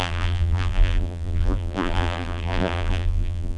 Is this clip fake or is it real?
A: fake